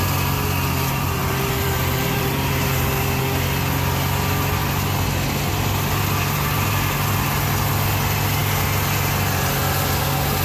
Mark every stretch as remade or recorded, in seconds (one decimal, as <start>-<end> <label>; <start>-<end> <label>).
0.0-1.2 recorded; 1.2-3.2 remade; 3.2-10.4 recorded